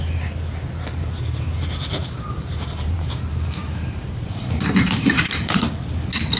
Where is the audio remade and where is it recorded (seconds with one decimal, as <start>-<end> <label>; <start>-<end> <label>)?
0.0-2.0 recorded; 2.0-5.7 remade; 5.7-6.4 recorded